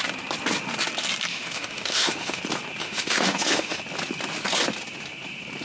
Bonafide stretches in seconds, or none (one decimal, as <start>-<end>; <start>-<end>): 0.0-1.3; 2.4-2.8; 3.8-5.6